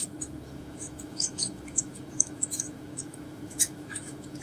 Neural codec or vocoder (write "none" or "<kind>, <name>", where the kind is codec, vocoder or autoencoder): autoencoder, DAC-VAE